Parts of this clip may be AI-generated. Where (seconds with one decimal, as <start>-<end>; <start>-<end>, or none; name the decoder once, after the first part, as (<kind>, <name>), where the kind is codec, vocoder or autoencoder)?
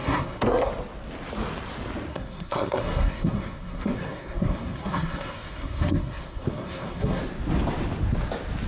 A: 0.0-0.7 (codec, SNAC); 2.1-7.2